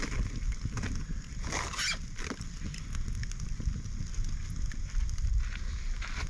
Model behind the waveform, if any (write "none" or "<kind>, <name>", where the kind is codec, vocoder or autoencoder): none